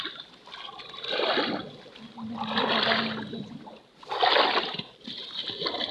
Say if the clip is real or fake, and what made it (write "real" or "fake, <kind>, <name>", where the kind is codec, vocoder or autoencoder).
real